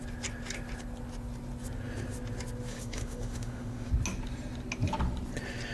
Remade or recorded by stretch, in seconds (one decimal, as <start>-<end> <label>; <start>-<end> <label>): 0.0-2.7 recorded; 2.7-3.9 remade; 3.9-5.7 recorded